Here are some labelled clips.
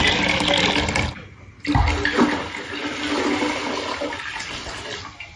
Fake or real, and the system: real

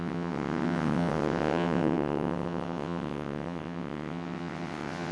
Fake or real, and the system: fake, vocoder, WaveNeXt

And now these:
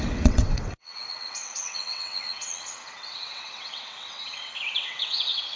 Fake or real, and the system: fake, vocoder, WaveNeXt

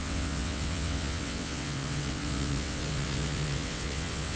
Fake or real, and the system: fake, vocoder, WaveNeXt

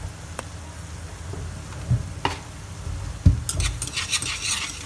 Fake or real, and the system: real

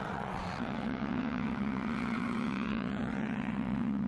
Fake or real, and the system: fake, vocoder, WaveNeXt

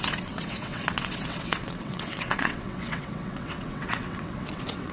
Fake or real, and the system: fake, vocoder, WaveNeXt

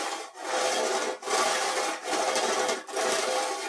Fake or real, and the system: real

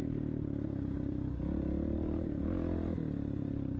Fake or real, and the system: real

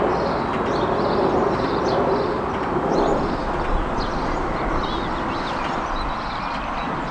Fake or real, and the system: real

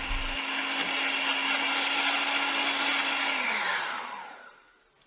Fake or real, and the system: real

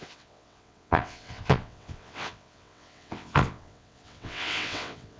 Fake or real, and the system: fake, vocoder, WaveNeXt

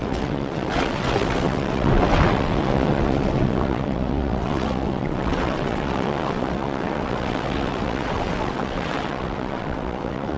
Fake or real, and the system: fake, vocoder, WaveNeXt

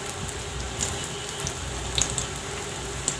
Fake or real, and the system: real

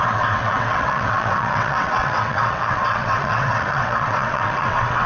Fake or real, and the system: fake, vocoder, WaveNeXt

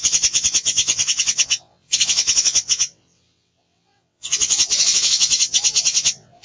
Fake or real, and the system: fake, vocoder, WaveNeXt